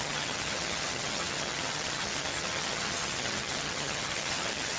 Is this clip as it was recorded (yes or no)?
no